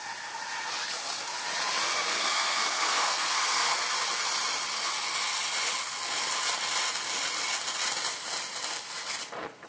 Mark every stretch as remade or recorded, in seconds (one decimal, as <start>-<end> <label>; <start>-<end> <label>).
0.0-2.1 recorded; 2.1-3.8 remade; 3.8-9.7 recorded